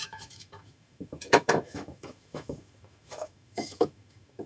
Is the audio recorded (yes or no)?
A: no